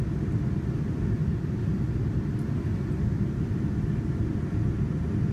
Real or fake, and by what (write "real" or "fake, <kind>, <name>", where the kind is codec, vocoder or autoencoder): real